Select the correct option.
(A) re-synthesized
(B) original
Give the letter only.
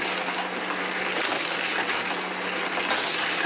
B